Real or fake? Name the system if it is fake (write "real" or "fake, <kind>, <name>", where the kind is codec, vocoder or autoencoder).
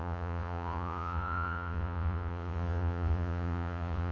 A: fake, vocoder, Vocos